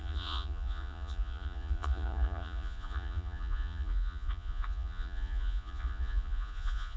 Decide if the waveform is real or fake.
fake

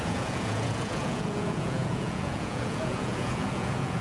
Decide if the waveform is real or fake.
fake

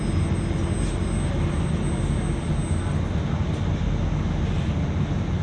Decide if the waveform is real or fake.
real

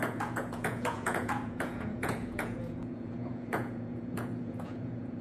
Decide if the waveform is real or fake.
fake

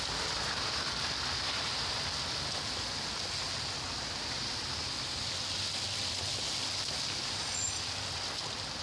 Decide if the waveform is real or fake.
real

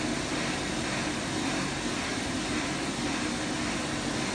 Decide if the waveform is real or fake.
real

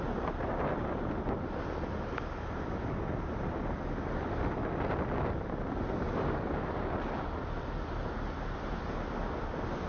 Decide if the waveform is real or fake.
real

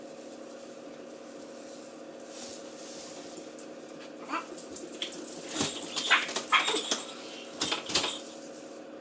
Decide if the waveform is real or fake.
real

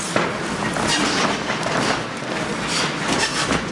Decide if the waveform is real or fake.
real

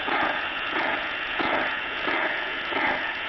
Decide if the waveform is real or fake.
fake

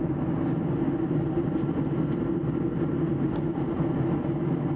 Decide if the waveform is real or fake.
real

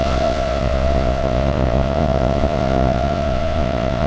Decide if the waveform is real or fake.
fake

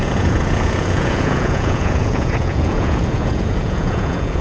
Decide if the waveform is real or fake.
fake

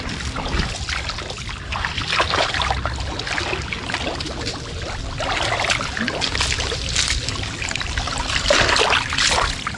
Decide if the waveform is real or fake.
real